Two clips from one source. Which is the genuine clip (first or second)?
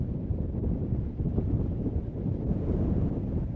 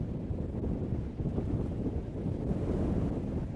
second